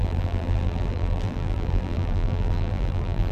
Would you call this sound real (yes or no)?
no